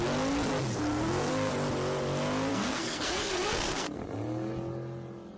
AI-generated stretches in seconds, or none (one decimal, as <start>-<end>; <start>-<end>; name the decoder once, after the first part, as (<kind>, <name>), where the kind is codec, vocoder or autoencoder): 0.9-1.5 (codec, SNAC); 2.5-4.0